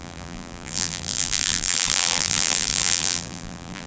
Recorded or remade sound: remade